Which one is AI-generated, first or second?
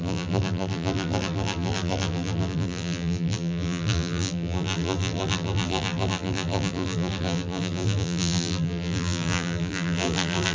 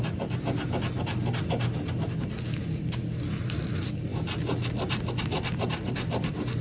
first